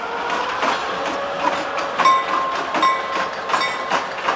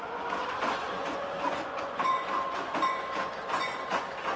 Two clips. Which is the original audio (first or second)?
first